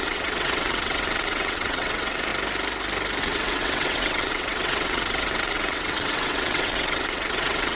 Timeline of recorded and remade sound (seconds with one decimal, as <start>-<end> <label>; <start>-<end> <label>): 0.0-2.3 remade; 2.3-3.2 recorded; 3.2-7.7 remade